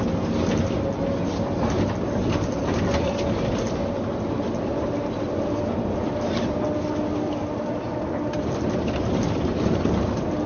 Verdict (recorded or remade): recorded